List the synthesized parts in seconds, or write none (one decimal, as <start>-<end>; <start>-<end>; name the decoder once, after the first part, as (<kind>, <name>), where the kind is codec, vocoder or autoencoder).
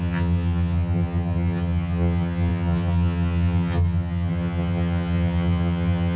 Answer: 0.0-6.2 (vocoder, HiFi-GAN)